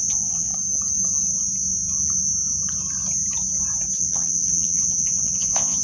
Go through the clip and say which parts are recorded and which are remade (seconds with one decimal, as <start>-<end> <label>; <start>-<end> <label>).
0.0-0.5 remade; 0.5-4.0 recorded; 4.0-5.8 remade